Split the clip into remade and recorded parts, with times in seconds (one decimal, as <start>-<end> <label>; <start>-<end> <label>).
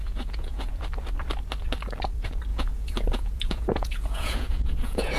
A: 0.0-0.8 remade; 0.8-2.5 recorded; 2.5-5.2 remade